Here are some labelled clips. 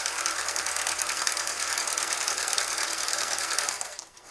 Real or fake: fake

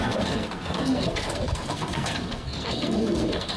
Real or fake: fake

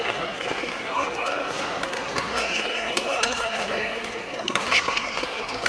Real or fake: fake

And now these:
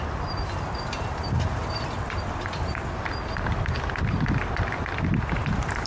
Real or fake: real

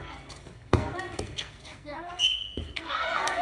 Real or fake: fake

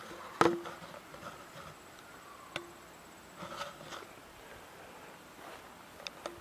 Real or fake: real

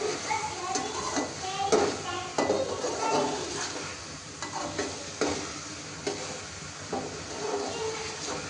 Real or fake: real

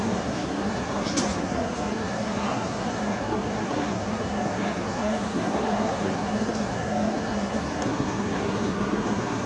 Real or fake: fake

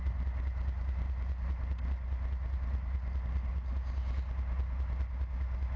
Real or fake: real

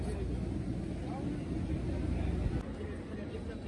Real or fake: real